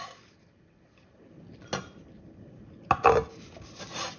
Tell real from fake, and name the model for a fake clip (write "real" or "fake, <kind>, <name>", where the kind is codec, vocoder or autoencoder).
real